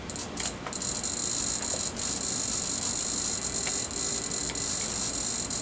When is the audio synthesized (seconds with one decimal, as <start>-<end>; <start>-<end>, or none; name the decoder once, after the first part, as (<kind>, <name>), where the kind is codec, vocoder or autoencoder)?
none